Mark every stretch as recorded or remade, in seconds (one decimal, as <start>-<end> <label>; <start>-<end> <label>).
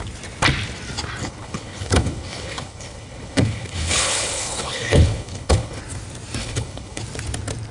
0.0-1.2 recorded; 1.2-5.8 remade; 5.8-6.4 recorded; 6.4-7.0 remade; 7.0-7.7 recorded